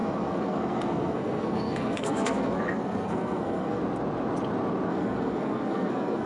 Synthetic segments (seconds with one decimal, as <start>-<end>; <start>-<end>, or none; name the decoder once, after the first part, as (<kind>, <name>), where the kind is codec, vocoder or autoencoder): 0.0-3.8 (codec, SNAC); 4.9-6.3